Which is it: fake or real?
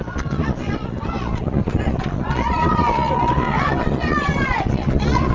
fake